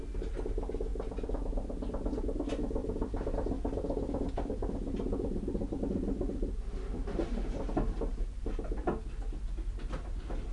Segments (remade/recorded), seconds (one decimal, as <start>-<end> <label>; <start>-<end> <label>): 0.0-10.5 recorded